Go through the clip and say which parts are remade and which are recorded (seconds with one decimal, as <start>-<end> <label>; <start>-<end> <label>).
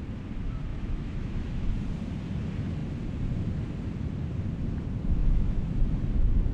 0.0-0.7 recorded; 0.7-1.7 remade; 1.7-5.2 recorded; 5.2-5.7 remade; 5.7-6.5 recorded